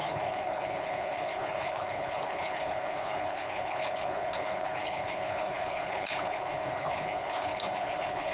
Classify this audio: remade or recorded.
remade